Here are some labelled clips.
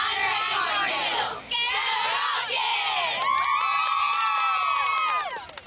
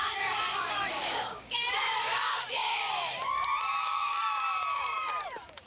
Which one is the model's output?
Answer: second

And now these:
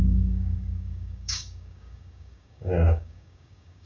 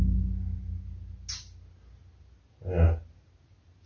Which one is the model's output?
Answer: first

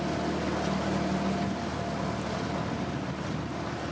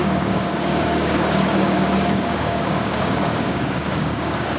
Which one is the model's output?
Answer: second